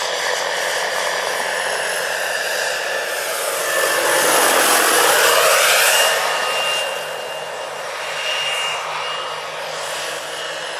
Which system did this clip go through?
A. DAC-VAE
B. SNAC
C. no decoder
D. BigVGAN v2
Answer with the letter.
C